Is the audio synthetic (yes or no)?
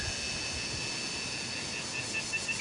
no